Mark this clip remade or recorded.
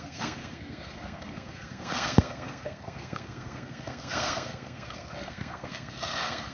remade